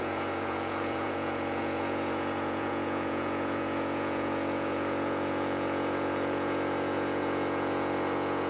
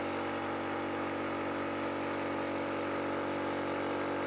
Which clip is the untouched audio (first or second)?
second